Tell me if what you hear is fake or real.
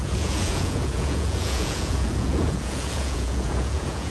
fake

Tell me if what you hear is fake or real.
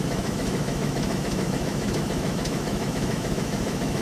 fake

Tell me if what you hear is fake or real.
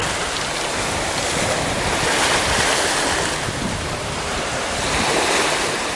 fake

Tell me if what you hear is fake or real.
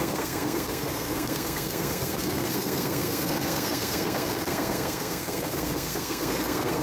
fake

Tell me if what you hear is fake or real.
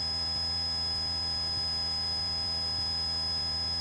real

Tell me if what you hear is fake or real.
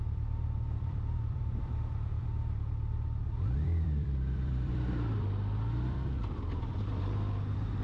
fake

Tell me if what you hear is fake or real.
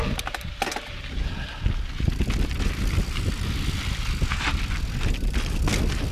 real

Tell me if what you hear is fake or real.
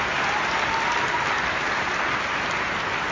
real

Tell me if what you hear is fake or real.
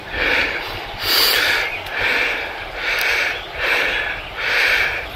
real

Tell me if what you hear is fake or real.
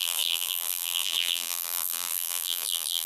fake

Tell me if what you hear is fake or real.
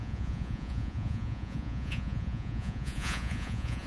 fake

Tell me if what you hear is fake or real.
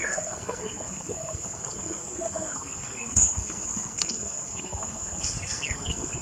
fake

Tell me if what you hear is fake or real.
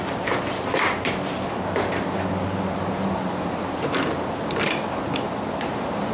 real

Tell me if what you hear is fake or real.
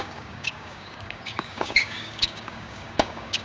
fake